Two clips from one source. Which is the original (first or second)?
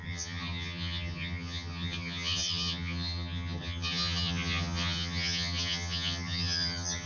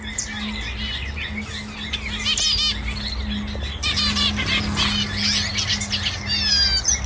second